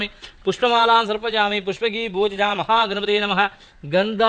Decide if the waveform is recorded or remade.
remade